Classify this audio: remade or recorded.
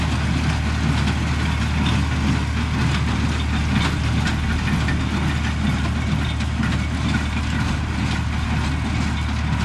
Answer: recorded